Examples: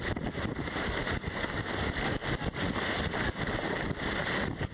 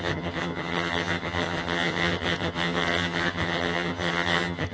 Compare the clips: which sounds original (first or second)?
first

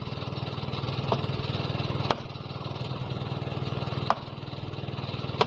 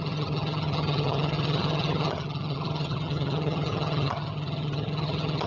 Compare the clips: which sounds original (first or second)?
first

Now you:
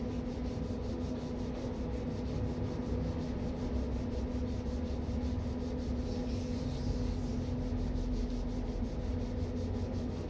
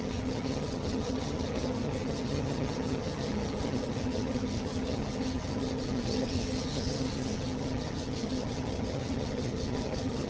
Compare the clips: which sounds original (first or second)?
first